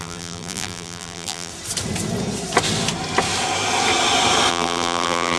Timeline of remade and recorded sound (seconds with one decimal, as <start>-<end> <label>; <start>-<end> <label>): 0.0-1.5 remade; 1.5-4.5 recorded; 4.5-5.4 remade